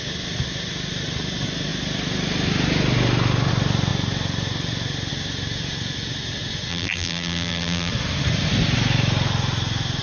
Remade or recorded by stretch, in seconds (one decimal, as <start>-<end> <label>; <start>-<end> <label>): 0.0-6.7 recorded; 6.7-7.9 remade; 7.9-10.0 recorded